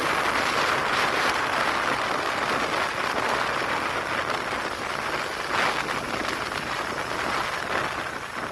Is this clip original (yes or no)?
yes